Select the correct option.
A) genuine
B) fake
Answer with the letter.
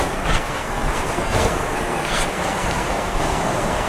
B